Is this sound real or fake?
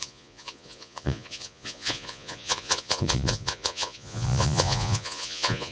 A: fake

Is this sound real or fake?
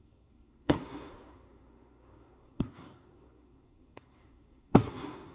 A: fake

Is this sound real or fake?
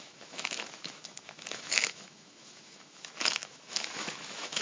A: fake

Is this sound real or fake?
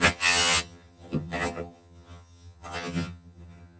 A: fake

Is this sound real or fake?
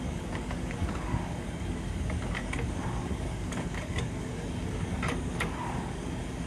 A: fake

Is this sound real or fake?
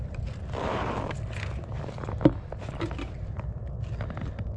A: real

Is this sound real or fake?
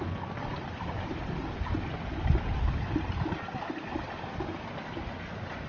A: real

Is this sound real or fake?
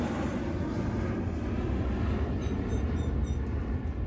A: real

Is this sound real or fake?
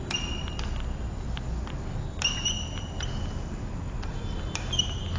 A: real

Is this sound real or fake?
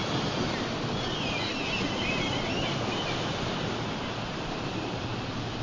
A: fake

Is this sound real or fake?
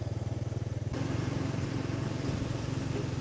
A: real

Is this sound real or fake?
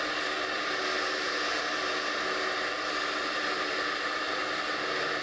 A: real